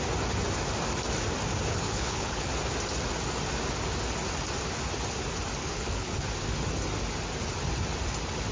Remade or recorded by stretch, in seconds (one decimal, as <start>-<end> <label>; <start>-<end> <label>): 0.0-1.7 recorded; 1.7-2.5 remade; 2.5-5.6 recorded; 5.6-6.1 remade; 6.1-8.5 recorded